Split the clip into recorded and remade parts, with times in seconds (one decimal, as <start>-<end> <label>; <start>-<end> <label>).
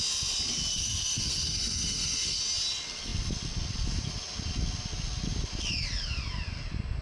0.0-0.7 recorded; 0.7-2.4 remade; 2.4-7.0 recorded